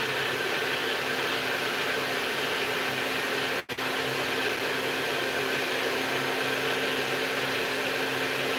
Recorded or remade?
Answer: recorded